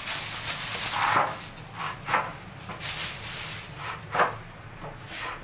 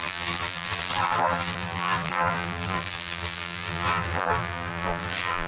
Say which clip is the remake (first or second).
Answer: second